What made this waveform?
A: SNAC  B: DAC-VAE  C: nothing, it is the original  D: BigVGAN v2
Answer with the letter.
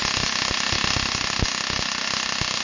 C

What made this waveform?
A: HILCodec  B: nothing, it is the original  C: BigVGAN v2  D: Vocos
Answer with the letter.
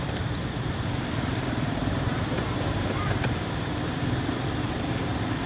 C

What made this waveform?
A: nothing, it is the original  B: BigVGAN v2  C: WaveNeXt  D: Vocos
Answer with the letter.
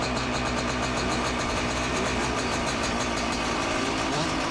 B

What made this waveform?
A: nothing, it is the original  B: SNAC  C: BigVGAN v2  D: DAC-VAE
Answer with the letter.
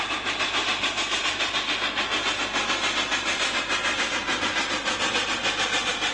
A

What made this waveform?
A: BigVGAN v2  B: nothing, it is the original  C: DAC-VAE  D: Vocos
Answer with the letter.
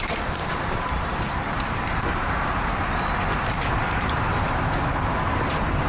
A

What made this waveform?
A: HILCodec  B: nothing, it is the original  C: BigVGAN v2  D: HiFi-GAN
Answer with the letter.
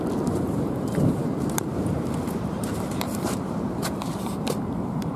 C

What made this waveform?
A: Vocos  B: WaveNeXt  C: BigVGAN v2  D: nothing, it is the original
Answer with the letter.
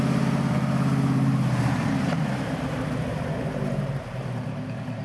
C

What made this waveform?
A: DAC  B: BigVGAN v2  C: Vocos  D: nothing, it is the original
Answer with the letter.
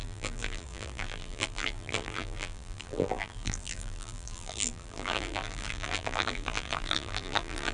B